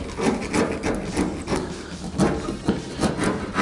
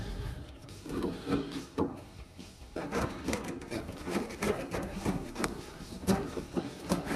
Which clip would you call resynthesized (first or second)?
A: second